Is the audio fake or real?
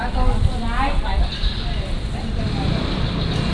real